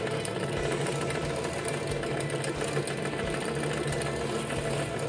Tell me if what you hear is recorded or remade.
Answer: recorded